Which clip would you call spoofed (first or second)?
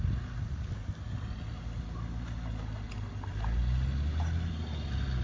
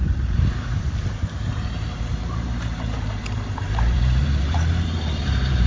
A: second